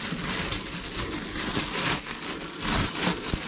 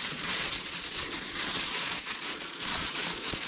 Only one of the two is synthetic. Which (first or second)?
second